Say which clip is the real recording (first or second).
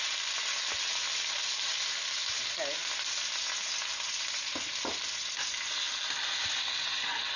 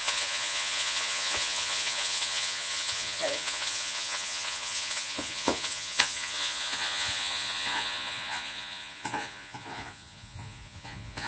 first